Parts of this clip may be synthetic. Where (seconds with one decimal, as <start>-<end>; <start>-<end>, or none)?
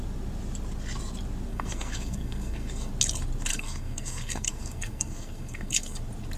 1.5-2.9; 3.5-6.0